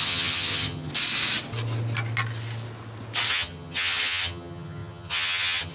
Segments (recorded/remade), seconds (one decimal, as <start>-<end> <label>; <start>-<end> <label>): 0.0-0.9 remade; 0.9-3.3 recorded; 3.3-5.7 remade